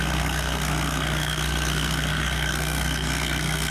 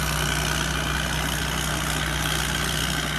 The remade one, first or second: first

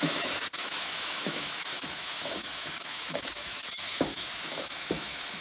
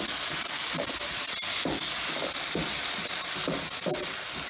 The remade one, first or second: first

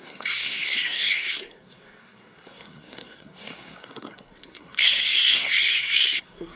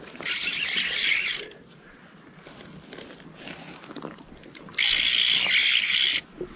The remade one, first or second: first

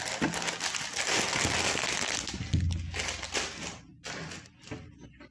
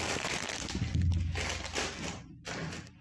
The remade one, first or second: second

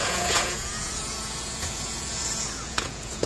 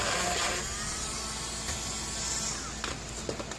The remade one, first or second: first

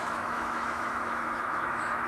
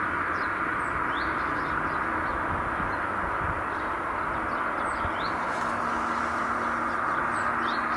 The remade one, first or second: first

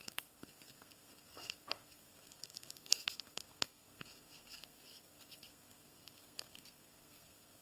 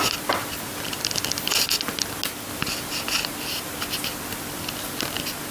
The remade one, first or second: first